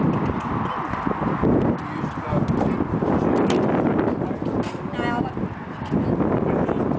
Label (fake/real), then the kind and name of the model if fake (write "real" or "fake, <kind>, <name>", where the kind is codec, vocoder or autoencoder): real